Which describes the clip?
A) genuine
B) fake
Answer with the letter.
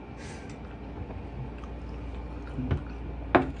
A